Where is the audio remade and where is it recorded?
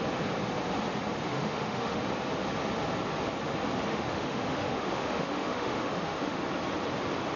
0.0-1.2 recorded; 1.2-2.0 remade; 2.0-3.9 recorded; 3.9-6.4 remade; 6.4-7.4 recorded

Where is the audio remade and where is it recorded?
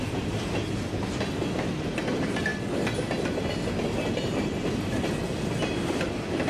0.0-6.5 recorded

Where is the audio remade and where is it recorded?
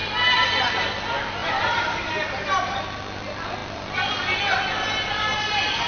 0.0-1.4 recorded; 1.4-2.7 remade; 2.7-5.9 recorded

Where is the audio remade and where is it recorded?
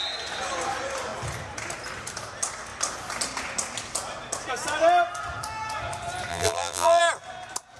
0.0-6.3 recorded; 6.3-7.0 remade; 7.0-7.8 recorded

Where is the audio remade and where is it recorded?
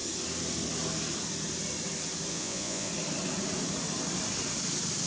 0.0-2.3 recorded; 2.3-2.9 remade; 2.9-5.1 recorded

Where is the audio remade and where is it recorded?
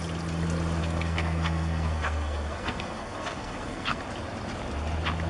0.0-0.8 recorded; 0.8-4.0 remade; 4.0-5.3 recorded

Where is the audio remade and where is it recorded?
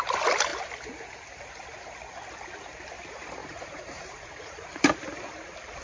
0.0-3.4 recorded; 3.4-4.8 remade; 4.8-5.8 recorded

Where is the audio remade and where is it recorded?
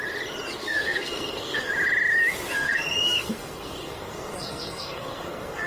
0.0-0.6 recorded; 0.6-1.7 remade; 1.7-2.5 recorded; 2.5-5.7 remade